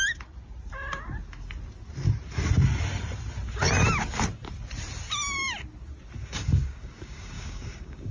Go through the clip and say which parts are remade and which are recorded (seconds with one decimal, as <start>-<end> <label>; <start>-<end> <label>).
0.0-6.2 recorded; 6.2-8.1 remade